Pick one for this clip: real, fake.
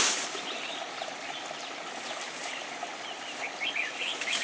real